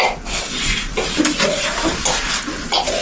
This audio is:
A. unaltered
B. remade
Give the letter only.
A